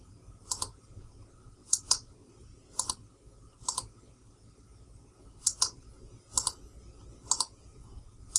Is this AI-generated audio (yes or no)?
no